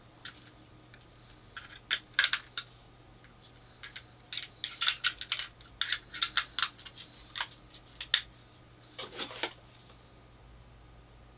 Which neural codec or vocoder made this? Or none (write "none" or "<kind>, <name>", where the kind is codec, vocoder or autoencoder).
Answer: none